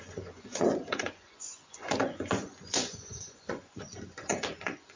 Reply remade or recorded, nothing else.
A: remade